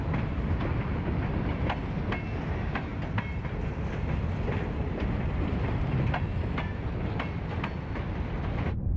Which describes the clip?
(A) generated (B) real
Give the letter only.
B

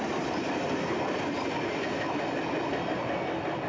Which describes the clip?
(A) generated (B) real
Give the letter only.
B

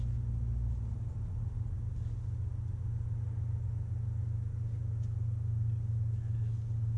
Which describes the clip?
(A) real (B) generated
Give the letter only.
A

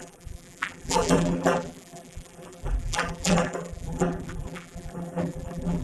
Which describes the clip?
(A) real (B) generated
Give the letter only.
B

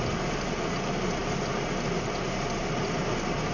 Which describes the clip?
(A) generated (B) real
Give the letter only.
B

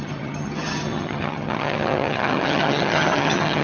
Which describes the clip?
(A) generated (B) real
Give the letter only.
A